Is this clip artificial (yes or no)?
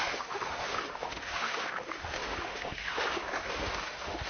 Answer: yes